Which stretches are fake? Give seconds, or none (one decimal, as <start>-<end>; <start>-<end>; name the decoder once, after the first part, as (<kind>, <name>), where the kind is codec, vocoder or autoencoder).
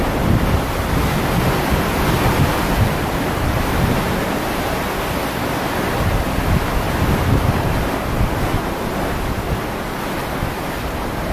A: 2.5-3.6 (vocoder, BigVGAN v2)